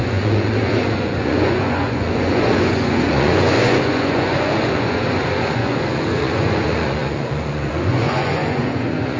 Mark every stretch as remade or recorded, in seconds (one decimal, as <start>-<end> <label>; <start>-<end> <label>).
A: 0.0-9.2 remade